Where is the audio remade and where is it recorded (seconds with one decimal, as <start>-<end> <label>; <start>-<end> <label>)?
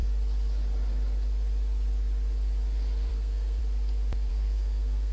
0.0-3.1 recorded; 3.1-3.6 remade; 3.6-4.3 recorded; 4.3-5.1 remade